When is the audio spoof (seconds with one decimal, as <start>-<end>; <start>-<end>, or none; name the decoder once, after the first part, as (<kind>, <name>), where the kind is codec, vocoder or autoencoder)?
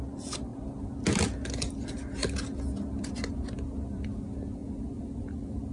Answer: none